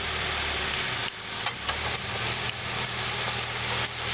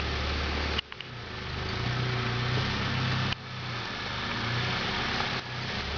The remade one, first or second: first